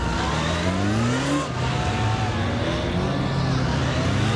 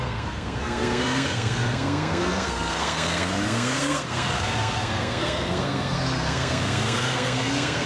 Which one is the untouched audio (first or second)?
first